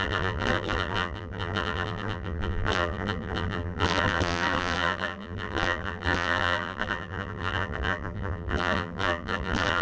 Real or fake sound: fake